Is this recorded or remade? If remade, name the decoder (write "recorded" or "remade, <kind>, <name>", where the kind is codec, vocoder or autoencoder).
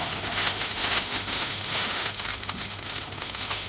remade, autoencoder, DAC-VAE